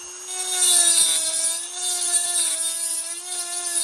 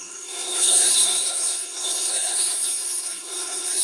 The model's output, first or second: second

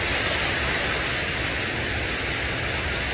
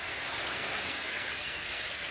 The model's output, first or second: second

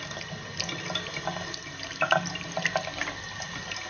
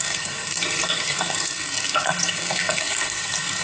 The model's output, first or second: second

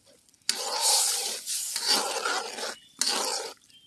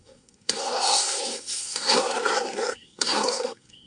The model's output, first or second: second